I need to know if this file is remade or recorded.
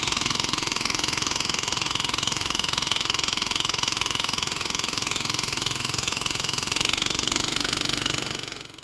remade